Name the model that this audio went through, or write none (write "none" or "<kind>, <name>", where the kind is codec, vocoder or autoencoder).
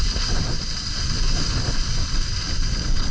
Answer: none